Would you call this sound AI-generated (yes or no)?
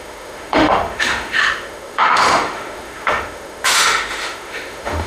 yes